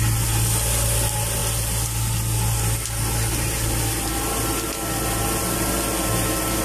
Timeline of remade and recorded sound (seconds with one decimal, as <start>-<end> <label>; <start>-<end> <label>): 0.0-6.6 recorded